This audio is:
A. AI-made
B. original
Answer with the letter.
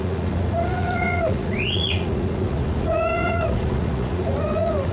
A